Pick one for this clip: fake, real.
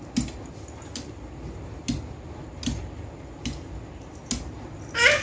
real